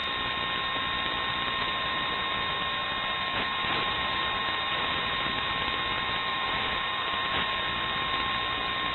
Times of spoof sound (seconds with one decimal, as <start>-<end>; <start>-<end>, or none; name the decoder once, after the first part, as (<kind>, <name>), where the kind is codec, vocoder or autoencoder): 1.6-2.1 (vocoder, BigVGAN v2); 3.4-5.5; 6.3-7.5